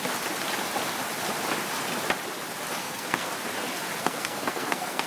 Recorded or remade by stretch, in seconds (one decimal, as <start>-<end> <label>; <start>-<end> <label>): 0.0-2.8 recorded; 2.8-3.3 remade; 3.3-4.0 recorded; 4.0-5.1 remade